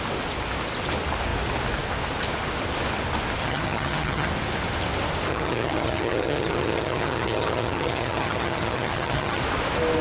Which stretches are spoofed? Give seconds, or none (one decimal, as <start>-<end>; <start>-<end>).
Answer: 3.4-4.3; 5.3-9.4